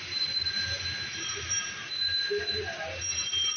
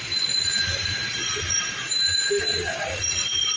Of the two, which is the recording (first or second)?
first